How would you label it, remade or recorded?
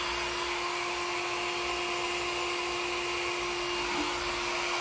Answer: recorded